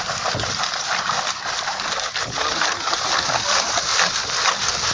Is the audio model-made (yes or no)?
no